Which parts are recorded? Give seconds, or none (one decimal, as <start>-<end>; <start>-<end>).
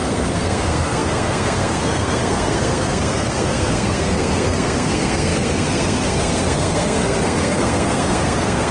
none